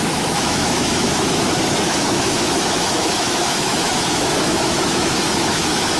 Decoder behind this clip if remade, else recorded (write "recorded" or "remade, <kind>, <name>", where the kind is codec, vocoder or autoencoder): remade, autoencoder, DAC-VAE